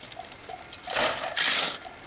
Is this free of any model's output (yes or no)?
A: yes